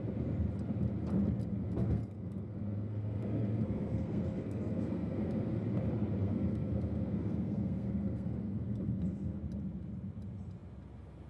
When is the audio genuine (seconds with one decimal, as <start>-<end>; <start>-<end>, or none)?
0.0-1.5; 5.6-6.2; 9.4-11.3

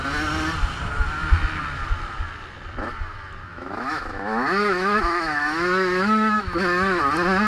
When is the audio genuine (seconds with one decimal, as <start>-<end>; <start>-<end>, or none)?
0.0-3.5; 7.0-7.5

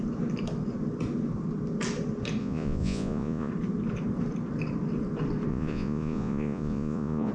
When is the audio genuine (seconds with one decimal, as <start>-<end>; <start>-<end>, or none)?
0.0-2.4; 3.5-5.5

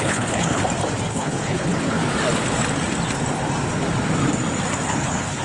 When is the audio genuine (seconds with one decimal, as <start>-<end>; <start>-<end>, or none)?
0.6-1.1; 2.0-4.9